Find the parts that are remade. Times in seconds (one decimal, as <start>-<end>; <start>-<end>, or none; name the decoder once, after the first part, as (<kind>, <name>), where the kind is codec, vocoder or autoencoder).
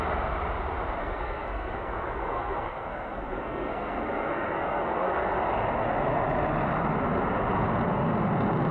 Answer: 1.0-5.3 (codec, SNAC)